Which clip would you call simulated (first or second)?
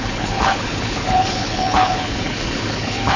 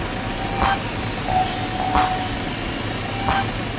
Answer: first